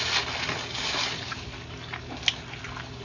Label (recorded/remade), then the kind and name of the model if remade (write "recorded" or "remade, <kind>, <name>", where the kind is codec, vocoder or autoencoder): recorded